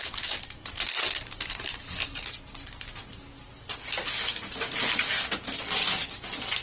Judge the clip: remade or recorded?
recorded